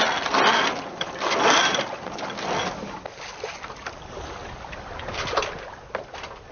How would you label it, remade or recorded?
recorded